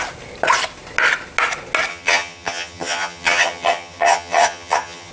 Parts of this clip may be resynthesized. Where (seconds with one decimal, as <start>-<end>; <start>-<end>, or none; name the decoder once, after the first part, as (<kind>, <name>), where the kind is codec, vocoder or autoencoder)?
1.9-5.1 (vocoder, HiFi-GAN)